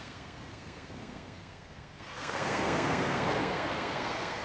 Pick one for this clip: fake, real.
fake